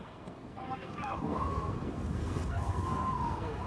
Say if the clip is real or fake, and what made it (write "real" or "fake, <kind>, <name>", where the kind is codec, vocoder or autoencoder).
fake, codec, SNAC